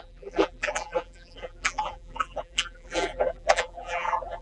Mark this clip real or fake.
fake